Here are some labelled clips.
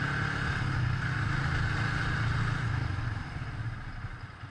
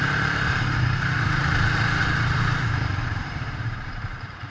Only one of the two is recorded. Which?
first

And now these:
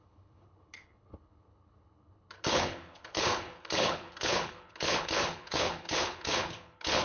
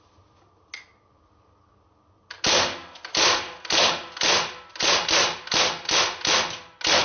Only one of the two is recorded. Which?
second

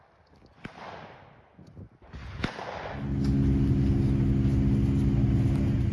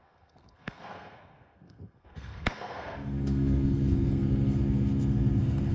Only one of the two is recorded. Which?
first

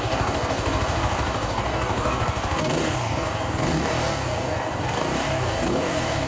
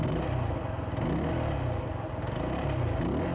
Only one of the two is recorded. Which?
second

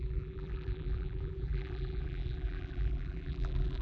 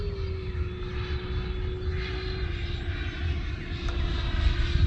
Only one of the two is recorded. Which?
second